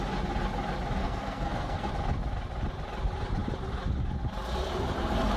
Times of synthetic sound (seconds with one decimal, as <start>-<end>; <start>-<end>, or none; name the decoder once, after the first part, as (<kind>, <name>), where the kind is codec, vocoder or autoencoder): 1.0-1.9 (codec, SNAC)